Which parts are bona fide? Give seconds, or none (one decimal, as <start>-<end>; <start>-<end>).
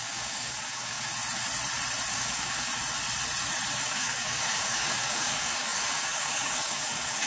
1.1-2.1; 2.7-3.8